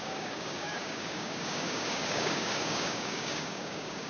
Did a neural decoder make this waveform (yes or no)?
yes